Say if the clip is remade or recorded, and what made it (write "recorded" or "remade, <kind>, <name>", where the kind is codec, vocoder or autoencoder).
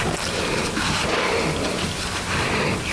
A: recorded